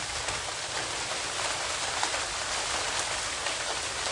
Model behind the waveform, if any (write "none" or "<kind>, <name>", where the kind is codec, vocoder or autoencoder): none